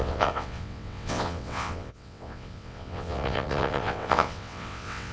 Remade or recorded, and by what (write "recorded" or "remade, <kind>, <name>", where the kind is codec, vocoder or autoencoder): remade, vocoder, WaveNeXt